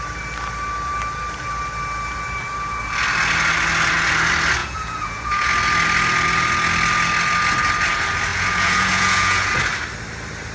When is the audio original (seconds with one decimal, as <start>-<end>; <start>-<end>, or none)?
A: 0.0-4.6; 5.5-8.3; 9.5-10.5